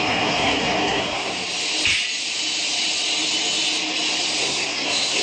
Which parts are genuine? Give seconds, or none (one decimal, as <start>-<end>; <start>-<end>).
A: 1.3-4.4